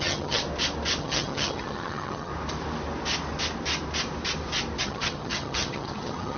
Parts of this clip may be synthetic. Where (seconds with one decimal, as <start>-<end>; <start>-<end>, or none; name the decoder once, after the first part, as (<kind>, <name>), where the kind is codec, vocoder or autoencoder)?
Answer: 0.0-0.4 (vocoder, HiFi-GAN); 1.0-2.3; 4.8-6.4